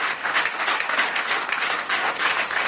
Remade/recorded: remade